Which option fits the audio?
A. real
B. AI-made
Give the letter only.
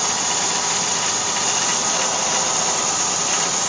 A